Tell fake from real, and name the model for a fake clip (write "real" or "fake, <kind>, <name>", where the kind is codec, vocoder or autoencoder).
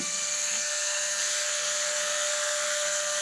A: fake, codec, SNAC